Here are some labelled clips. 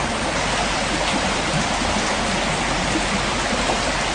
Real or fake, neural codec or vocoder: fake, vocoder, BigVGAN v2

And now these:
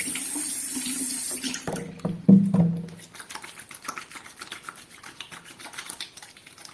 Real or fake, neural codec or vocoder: real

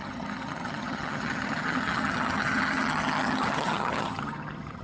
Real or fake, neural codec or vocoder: fake, vocoder, HiFi-GAN